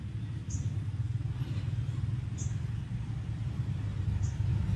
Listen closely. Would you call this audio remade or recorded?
recorded